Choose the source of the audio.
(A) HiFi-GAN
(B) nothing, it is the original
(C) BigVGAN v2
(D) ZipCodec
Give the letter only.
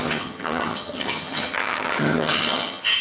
A